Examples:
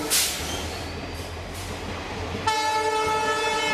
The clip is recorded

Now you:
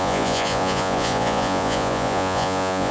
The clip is remade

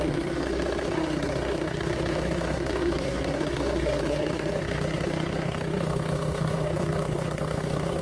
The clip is remade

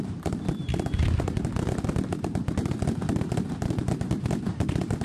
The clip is recorded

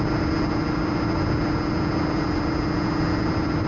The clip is recorded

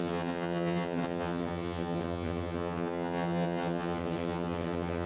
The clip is remade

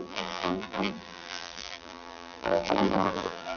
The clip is remade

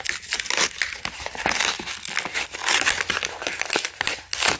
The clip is recorded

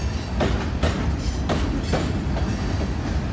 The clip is recorded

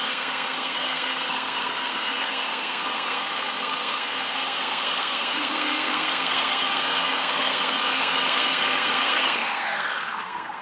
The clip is remade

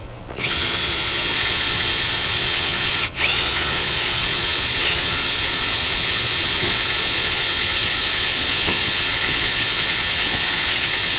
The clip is remade